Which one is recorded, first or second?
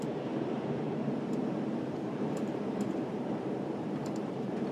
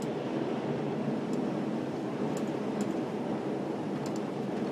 second